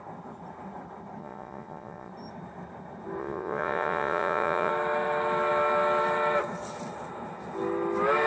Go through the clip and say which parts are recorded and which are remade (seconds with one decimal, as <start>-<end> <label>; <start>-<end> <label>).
0.0-1.2 recorded; 1.2-2.1 remade; 2.1-3.2 recorded; 3.2-4.7 remade; 4.7-8.3 recorded